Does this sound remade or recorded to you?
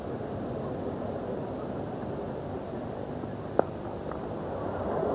recorded